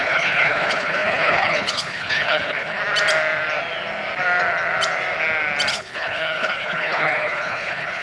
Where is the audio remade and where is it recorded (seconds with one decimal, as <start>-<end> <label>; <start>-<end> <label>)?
0.0-2.8 remade; 2.8-5.7 recorded; 5.7-8.0 remade